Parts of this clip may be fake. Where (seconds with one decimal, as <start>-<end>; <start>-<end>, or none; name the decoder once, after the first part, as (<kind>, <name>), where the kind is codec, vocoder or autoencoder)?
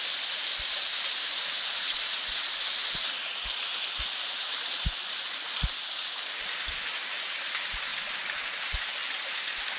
none